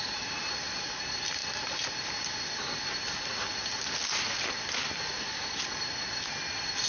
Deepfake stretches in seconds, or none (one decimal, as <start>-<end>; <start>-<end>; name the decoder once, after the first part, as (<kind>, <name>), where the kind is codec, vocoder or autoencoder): none